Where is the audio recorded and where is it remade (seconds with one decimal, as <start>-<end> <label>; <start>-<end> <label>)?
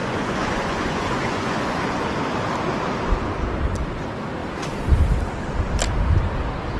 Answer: 0.0-2.0 remade; 2.0-6.8 recorded